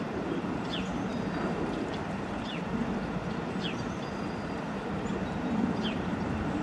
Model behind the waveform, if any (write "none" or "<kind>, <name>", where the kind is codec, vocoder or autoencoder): vocoder, BigVGAN v2